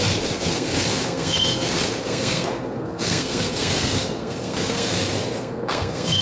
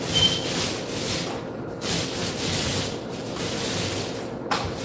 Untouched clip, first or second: second